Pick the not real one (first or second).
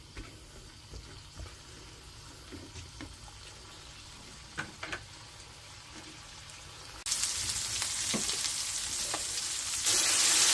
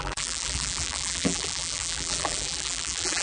second